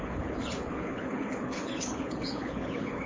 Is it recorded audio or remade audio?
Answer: remade